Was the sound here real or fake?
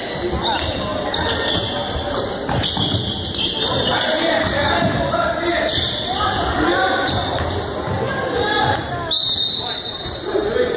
real